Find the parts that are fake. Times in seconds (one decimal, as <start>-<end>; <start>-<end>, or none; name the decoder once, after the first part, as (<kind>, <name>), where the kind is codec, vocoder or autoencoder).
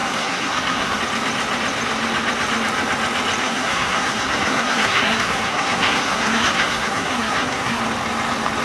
0.0-1.0 (codec, SNAC); 3.4-7.8